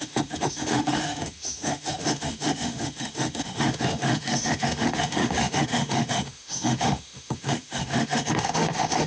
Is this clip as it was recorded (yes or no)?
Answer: no